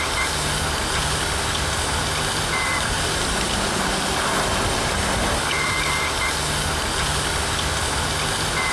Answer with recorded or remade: recorded